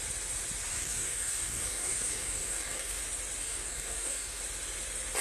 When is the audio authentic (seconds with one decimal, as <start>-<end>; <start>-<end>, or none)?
0.0-0.7; 3.0-3.4; 4.4-5.2